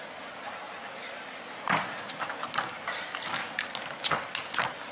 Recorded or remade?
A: recorded